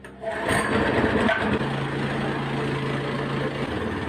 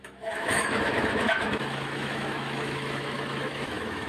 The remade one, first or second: second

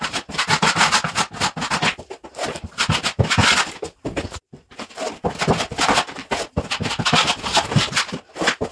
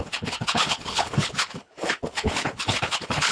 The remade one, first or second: second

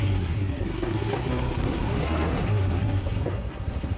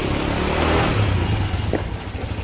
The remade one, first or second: first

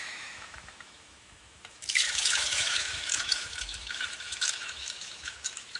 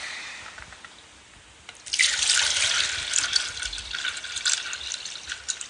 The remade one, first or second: first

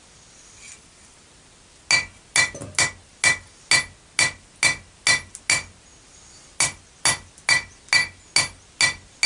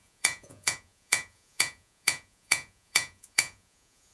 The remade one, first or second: second